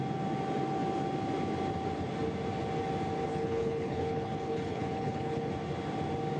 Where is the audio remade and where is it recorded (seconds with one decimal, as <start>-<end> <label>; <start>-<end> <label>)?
0.0-3.3 recorded; 3.3-5.5 remade; 5.5-6.4 recorded

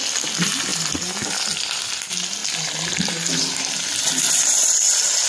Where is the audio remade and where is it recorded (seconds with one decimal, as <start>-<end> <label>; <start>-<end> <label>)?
0.0-5.3 recorded

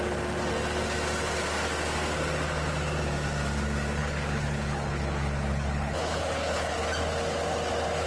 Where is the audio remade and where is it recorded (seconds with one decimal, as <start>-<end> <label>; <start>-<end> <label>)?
0.0-4.0 recorded; 4.0-6.8 remade; 6.8-8.1 recorded